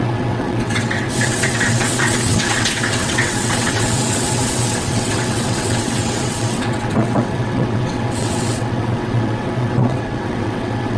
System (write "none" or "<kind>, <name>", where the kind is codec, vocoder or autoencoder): vocoder, WaveNeXt